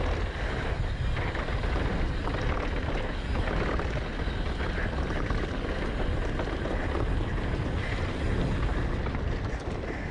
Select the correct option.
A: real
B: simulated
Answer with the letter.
A